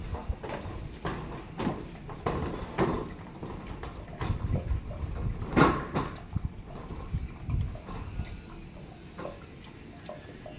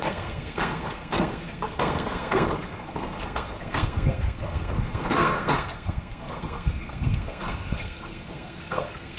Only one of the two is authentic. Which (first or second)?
first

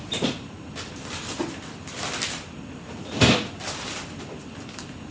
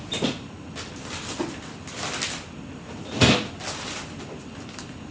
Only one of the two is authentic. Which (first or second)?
second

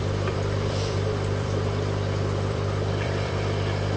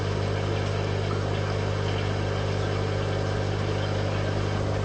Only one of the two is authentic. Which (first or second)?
second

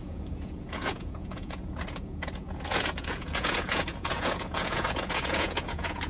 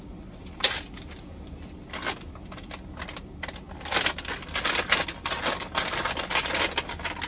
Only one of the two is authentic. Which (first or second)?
second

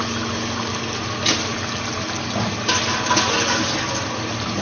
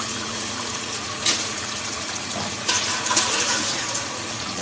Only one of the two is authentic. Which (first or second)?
first